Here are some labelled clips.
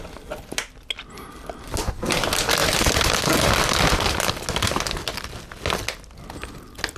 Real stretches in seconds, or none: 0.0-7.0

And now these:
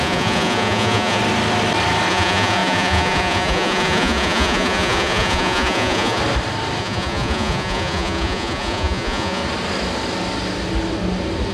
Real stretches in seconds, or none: 1.2-2.1; 6.2-6.8; 9.4-11.5

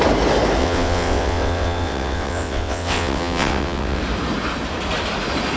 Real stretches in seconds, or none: 0.0-0.6; 4.0-5.6

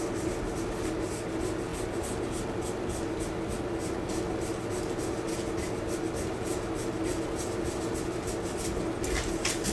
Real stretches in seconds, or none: 0.0-9.7

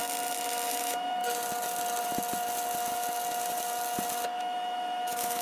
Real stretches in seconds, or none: 0.0-0.7; 1.2-4.4

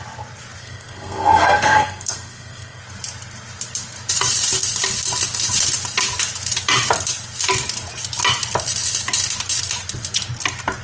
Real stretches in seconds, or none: 0.0-0.6; 2.8-10.8

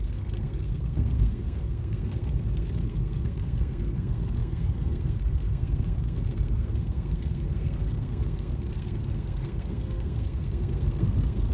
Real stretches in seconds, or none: none

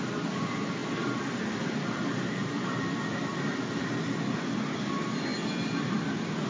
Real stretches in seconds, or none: none